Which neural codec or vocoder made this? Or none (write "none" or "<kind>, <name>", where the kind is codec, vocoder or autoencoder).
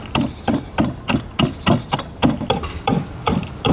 vocoder, BigVGAN v2